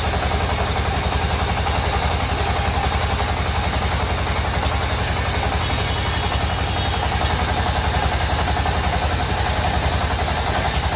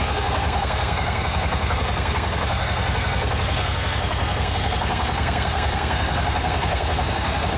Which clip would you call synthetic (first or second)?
second